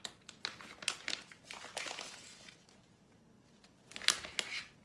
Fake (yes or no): no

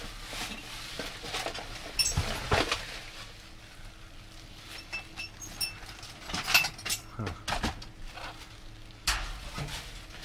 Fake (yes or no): no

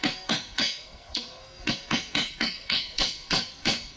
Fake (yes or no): yes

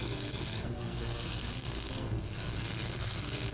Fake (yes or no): yes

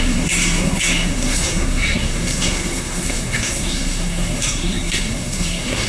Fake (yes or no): yes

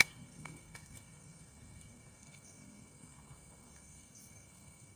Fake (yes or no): yes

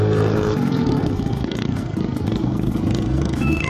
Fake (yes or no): yes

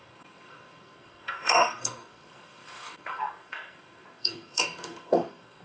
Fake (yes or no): yes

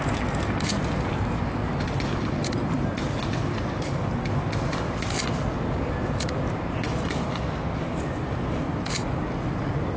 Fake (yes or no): no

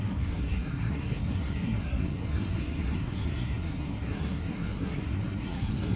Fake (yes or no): yes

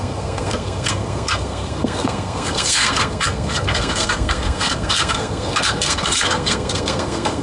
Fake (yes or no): yes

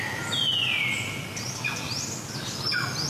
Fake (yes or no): no